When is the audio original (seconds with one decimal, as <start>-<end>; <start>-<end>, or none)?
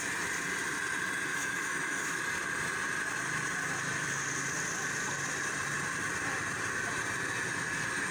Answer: 0.0-1.3; 2.2-8.1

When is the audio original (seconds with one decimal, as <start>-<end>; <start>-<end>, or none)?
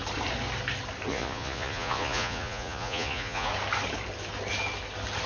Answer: 0.0-1.1; 3.5-5.3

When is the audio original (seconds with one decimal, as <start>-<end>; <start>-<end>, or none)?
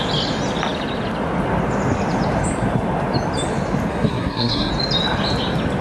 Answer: 0.0-3.9; 4.7-5.8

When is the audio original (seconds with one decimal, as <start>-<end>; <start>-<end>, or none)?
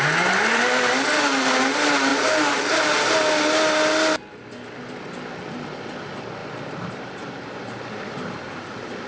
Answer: 0.0-2.1; 3.1-6.4; 8.4-9.1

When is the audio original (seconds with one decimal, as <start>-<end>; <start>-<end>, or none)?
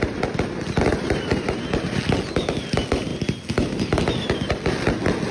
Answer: 0.0-0.9; 2.0-5.3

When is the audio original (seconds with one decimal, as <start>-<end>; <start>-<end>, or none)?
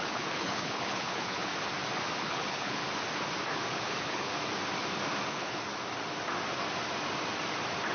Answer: 1.5-2.2; 2.8-3.7; 4.3-5.3; 5.7-7.9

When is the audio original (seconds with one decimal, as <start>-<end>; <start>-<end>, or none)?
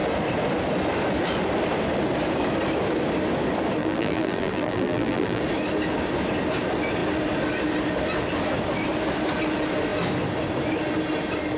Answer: 0.0-3.8; 5.4-11.6